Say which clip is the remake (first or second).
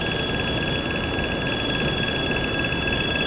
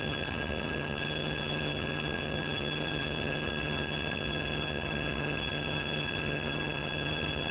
second